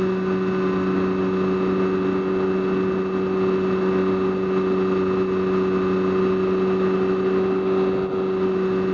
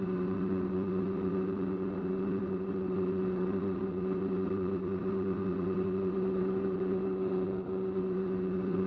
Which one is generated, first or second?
second